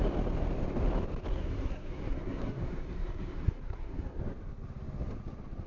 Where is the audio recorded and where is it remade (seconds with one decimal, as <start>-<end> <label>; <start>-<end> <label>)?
0.0-1.3 recorded; 1.3-4.2 remade; 4.2-5.7 recorded